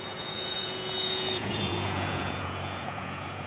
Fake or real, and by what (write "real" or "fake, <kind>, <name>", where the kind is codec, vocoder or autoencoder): fake, vocoder, Vocos